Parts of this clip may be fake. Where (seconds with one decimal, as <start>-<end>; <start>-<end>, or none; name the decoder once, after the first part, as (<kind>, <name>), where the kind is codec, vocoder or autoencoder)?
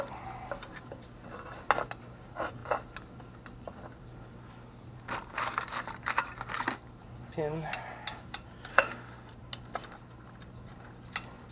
8.7-9.3 (autoencoder, DAC-VAE)